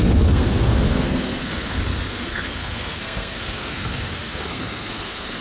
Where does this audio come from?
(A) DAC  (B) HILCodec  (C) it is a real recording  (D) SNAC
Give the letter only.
D